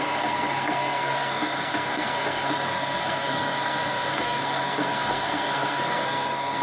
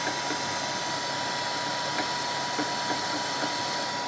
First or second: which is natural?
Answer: second